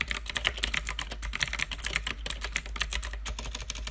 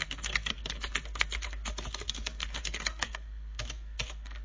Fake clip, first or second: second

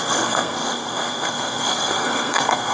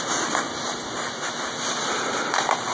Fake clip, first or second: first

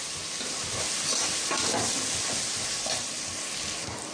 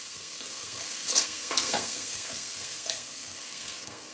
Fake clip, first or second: second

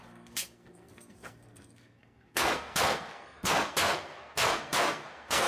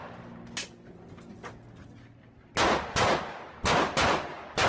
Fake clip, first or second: first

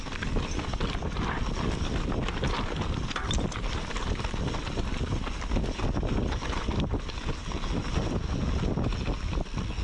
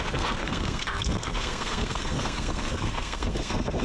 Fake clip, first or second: second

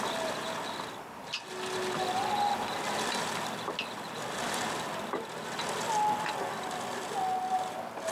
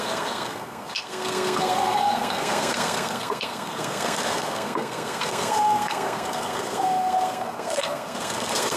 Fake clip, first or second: second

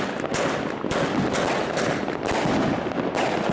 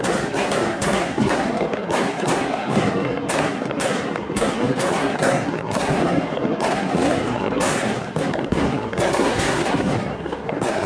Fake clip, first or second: second